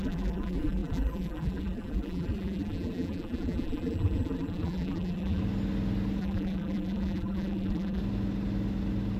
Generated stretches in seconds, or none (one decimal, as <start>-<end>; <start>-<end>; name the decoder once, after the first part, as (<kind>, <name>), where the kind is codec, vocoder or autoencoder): 0.0-5.4 (vocoder, BigVGAN v2); 6.2-8.0